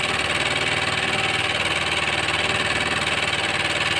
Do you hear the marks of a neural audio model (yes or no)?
no